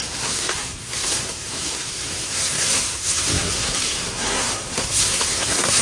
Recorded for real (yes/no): no